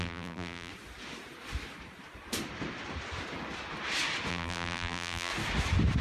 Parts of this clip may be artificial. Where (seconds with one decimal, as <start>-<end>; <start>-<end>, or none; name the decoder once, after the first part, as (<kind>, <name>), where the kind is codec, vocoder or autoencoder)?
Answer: 0.0-0.7 (vocoder, BigVGAN v2); 4.3-5.3